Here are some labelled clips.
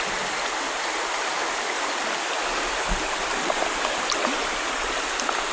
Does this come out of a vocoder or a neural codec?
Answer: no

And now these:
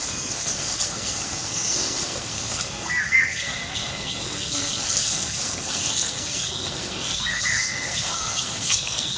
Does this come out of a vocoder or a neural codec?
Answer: yes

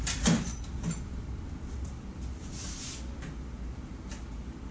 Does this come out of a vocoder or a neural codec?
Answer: no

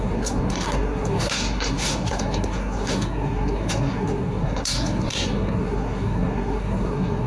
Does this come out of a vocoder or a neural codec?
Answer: yes